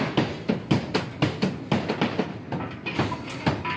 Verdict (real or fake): real